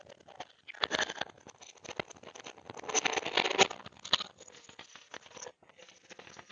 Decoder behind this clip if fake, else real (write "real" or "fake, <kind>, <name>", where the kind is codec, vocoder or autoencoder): real